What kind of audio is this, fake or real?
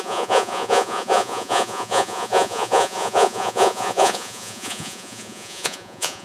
fake